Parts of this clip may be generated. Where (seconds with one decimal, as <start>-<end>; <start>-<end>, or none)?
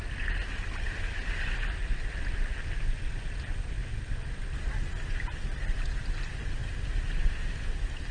none